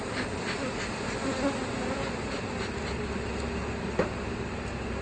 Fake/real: real